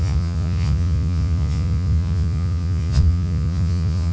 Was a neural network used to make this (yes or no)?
yes